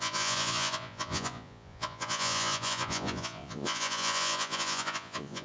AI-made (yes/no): yes